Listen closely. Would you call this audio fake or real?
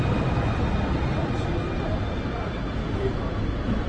real